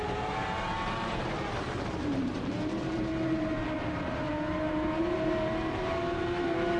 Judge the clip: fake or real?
fake